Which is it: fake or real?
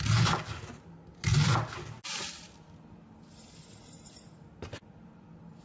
real